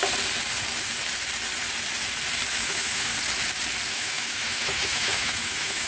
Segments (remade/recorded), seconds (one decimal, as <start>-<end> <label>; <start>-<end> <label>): 0.0-2.5 recorded; 2.5-3.1 remade; 3.1-3.9 recorded; 3.9-5.9 remade